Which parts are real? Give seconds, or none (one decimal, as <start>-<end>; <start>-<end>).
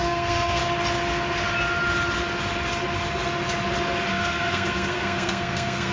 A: 0.6-4.1